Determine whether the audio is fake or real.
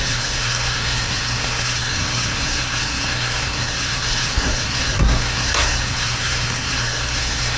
fake